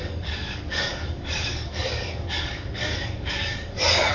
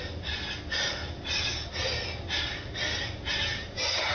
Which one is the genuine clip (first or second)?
second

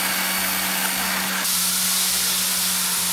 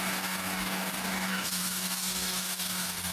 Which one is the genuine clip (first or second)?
first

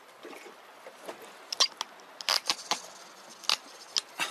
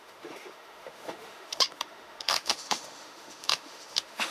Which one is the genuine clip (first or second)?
first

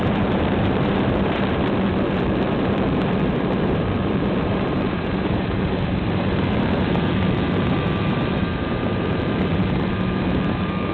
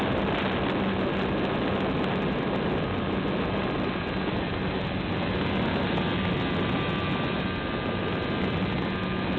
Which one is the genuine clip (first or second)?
second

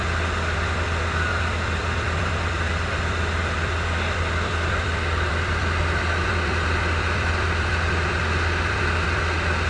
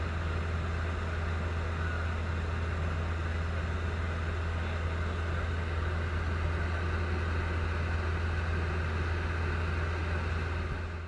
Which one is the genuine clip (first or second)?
second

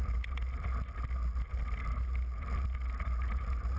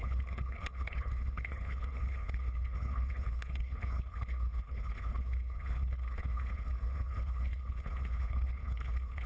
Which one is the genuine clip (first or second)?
first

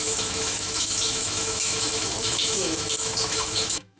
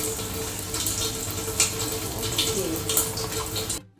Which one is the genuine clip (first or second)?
second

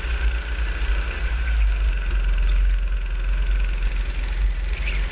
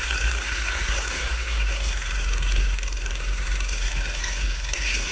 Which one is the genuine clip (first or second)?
first